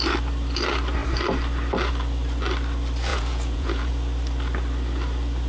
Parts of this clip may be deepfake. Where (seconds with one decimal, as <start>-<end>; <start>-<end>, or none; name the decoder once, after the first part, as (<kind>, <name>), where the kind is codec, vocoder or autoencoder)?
3.1-3.9 (vocoder, Vocos)